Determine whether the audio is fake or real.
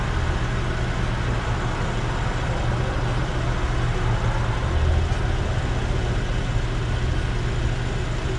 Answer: real